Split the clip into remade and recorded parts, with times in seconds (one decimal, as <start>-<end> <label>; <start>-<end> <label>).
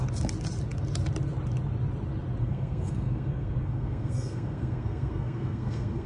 0.0-2.4 recorded; 2.4-6.1 remade